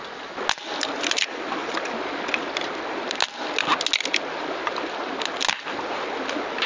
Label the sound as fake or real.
real